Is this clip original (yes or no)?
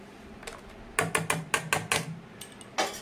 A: yes